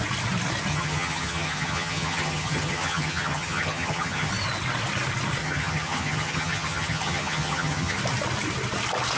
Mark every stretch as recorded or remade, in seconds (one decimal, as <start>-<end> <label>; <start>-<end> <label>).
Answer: 0.0-0.7 recorded; 0.7-4.3 remade; 4.3-5.4 recorded; 5.4-8.0 remade; 8.0-9.2 recorded